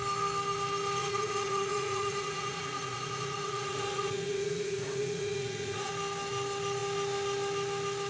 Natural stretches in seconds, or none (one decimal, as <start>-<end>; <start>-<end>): 0.0-1.0; 5.9-8.1

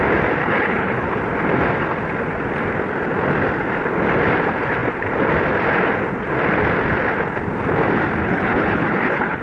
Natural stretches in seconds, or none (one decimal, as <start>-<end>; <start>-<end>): 0.0-0.4; 1.2-8.2

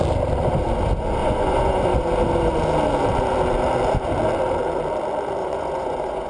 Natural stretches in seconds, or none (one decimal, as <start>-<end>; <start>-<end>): 0.0-1.2; 1.8-5.4